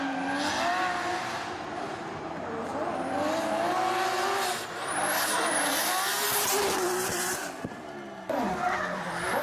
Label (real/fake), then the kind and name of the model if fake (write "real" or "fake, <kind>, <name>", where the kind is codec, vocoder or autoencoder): real